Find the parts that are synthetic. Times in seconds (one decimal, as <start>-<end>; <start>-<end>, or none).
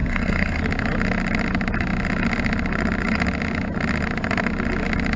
0.0-0.6